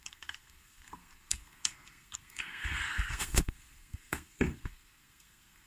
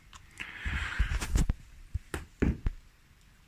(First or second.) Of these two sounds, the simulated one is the first